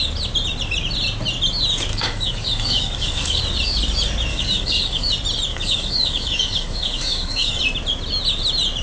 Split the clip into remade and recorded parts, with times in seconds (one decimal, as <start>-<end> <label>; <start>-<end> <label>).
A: 0.0-1.9 recorded; 1.9-3.4 remade; 3.4-4.3 recorded; 4.3-5.1 remade; 5.1-5.5 recorded; 5.5-7.6 remade; 7.6-8.8 recorded